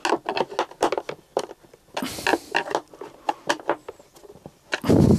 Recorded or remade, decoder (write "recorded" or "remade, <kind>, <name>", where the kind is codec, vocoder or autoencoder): recorded